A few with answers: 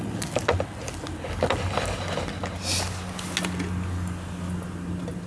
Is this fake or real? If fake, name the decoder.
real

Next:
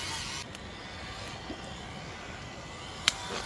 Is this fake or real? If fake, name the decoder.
real